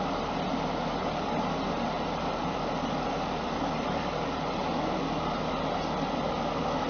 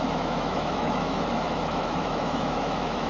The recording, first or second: first